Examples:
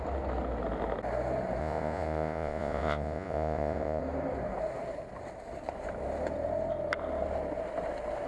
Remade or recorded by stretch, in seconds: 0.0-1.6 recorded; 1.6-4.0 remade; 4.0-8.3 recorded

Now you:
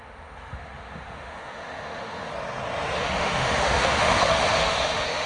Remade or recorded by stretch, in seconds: 0.0-2.3 remade; 2.3-3.0 recorded; 3.0-5.3 remade

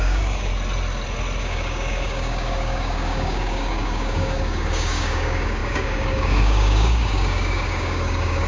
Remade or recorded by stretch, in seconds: 0.0-0.5 remade; 0.5-1.4 recorded; 1.4-8.5 remade

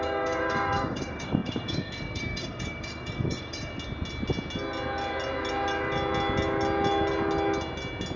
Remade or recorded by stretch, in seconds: 0.0-3.7 remade; 3.7-8.2 recorded

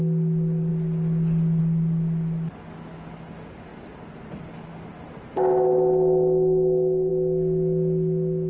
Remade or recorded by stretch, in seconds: 0.0-8.5 recorded

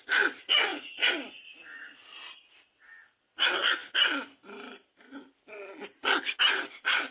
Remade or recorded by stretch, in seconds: 0.0-7.1 recorded